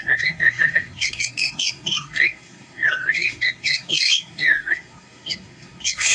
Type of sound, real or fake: fake